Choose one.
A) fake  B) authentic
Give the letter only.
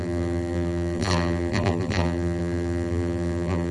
A